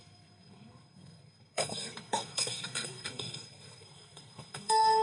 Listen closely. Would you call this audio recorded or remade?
remade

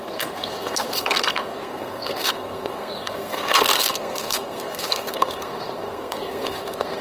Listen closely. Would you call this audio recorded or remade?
remade